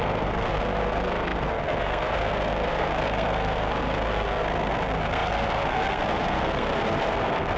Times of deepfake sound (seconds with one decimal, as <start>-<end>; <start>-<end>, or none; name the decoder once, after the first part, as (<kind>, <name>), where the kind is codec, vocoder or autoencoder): 0.0-7.6 (codec, SNAC)